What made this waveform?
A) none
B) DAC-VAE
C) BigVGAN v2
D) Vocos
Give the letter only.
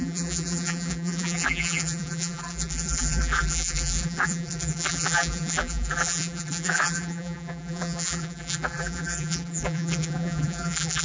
C